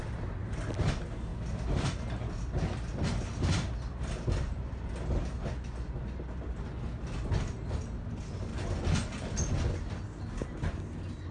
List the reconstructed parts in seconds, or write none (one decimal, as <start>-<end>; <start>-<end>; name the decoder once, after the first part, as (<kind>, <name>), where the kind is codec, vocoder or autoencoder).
none